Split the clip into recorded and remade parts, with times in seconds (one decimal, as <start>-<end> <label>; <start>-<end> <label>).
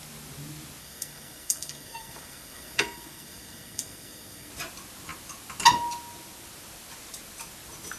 0.0-0.8 recorded; 0.8-4.5 remade; 4.5-8.0 recorded